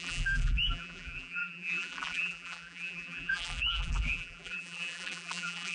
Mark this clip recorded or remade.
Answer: remade